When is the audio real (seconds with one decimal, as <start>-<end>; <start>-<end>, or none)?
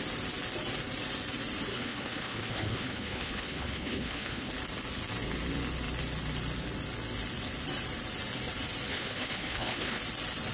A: 0.0-1.7; 4.5-8.9; 10.0-10.5